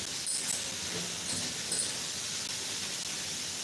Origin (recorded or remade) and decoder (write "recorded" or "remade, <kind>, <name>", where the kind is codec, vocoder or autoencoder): recorded